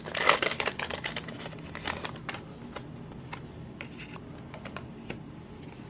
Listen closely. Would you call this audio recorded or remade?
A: recorded